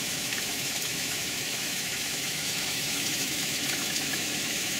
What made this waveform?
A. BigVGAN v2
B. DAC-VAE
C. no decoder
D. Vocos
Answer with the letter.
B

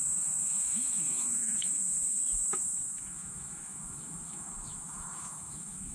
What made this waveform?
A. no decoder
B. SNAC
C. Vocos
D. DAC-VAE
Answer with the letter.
D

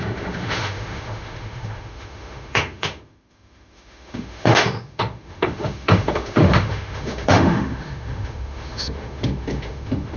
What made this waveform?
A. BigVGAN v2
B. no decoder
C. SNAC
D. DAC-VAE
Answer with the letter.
D